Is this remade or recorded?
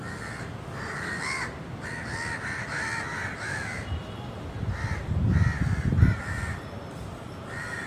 recorded